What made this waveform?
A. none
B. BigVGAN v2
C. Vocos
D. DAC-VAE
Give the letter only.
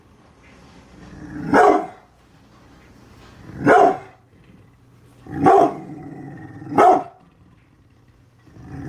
A